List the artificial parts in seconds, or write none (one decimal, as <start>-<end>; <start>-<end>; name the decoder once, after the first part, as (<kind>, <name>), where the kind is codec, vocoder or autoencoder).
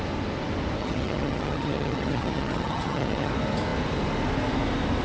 0.8-3.3 (vocoder, HiFi-GAN)